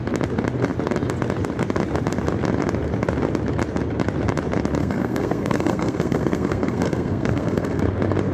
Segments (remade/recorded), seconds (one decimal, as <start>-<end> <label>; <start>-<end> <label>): 0.0-4.8 recorded; 4.8-7.8 remade; 7.8-8.3 recorded